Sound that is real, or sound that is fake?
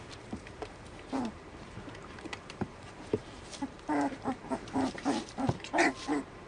fake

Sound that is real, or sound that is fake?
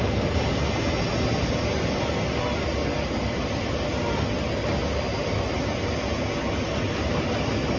real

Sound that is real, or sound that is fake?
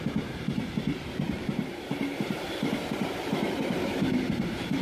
fake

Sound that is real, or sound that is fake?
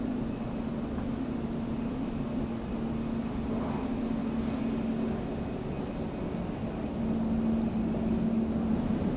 real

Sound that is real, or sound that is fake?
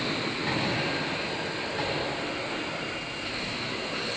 real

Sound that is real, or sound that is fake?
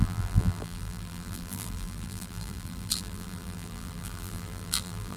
fake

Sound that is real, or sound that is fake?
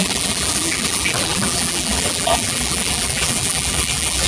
fake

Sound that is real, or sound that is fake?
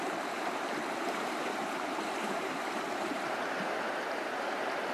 fake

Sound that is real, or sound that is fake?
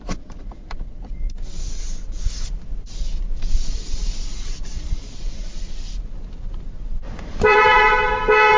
fake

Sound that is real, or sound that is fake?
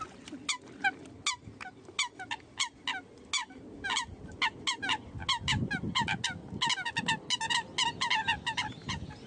real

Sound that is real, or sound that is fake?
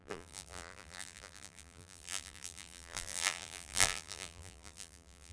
fake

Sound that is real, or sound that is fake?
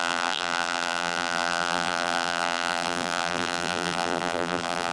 fake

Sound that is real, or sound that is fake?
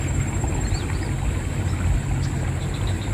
real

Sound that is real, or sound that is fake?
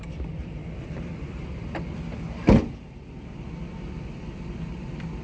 fake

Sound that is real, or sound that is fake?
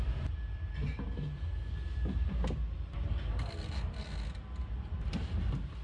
real